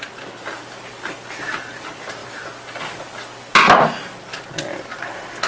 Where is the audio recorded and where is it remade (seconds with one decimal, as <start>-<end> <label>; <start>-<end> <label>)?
0.0-5.5 recorded